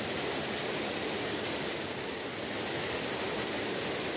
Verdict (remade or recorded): recorded